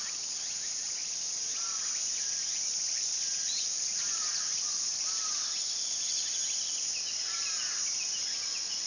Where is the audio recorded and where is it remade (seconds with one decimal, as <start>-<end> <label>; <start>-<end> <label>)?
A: 0.0-8.9 recorded